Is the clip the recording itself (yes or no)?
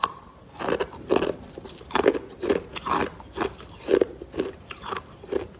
yes